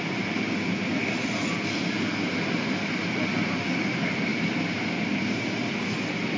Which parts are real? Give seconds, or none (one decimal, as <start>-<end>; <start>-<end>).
0.0-6.4